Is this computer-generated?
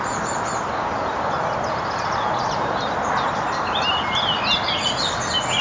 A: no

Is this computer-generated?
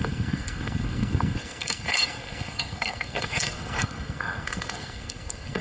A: yes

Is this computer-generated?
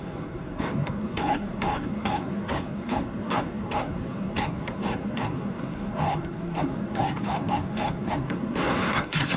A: yes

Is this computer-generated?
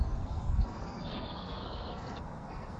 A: yes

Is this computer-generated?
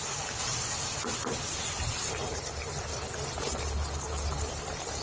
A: no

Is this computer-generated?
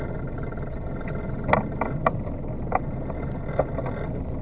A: no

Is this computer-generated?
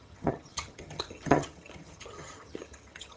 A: yes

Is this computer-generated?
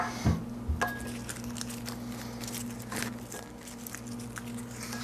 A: no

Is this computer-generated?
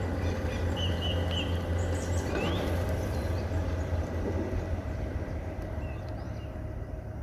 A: yes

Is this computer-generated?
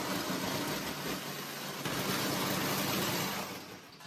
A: no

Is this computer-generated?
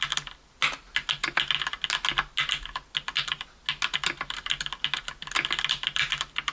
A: no